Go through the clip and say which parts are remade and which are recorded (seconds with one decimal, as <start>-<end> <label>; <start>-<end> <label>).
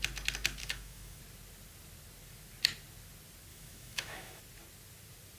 0.0-0.6 recorded; 0.6-1.2 remade; 1.2-3.5 recorded; 3.5-4.4 remade; 4.4-5.4 recorded